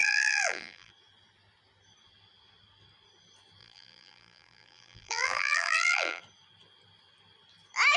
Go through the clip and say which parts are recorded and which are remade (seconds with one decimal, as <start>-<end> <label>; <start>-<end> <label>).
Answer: 0.0-0.9 remade; 0.9-3.6 recorded; 3.6-6.2 remade; 6.2-8.0 recorded